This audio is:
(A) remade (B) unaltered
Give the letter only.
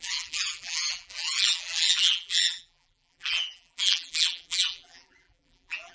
A